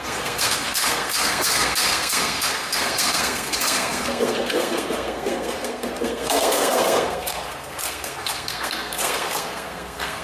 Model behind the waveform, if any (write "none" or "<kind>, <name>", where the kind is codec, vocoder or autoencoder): codec, SNAC